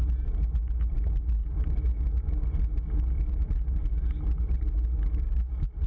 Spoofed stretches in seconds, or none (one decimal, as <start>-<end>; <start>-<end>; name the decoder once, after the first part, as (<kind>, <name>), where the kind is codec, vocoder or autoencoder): none